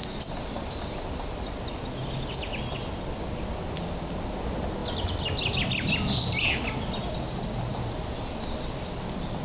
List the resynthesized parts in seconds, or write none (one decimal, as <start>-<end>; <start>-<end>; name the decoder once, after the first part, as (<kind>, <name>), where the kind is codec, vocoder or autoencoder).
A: 0.0-1.9 (vocoder, BigVGAN v2)